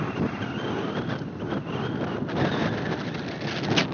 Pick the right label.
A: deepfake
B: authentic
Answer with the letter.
B